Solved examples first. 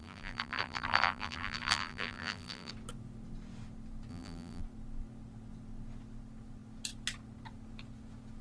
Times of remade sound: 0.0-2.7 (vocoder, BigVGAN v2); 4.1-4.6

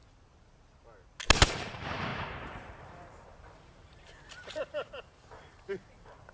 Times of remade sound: 1.5-6.3 (vocoder, BigVGAN v2)

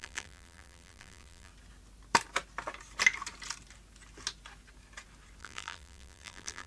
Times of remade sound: 0.0-1.5 (vocoder, BigVGAN v2); 5.4-6.7

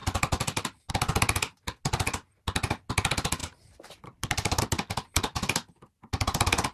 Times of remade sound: 3.4-4.6 (vocoder, BigVGAN v2)

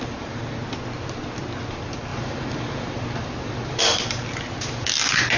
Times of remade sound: 0.0-0.4 (vocoder, BigVGAN v2); 1.7-4.2

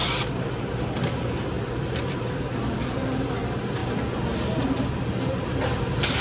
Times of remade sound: 2.7-3.8 (vocoder, BigVGAN v2); 5.4-6.2

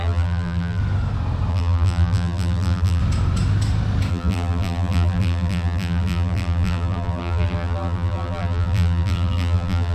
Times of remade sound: 0.0-0.8 (vocoder, BigVGAN v2); 1.5-3.0; 4.1-9.9